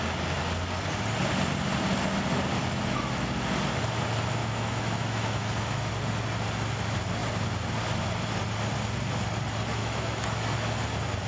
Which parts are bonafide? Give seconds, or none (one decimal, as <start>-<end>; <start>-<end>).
0.0-2.6; 3.1-4.4; 5.9-9.8; 10.7-11.3